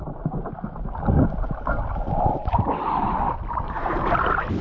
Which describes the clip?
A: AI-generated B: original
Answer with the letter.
B